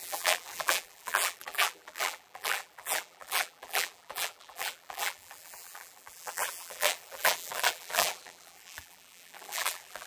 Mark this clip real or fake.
fake